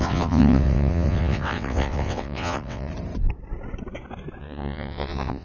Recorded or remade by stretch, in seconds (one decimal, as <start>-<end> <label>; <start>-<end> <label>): 0.0-2.9 remade; 2.9-4.4 recorded; 4.4-5.4 remade